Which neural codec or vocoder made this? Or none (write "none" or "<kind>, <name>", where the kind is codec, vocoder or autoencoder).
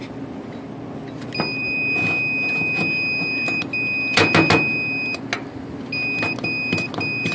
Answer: none